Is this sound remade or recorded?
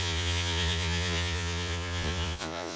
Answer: remade